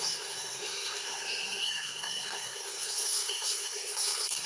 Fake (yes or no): yes